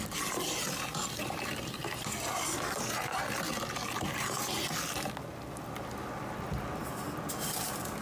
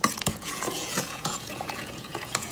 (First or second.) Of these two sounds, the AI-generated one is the second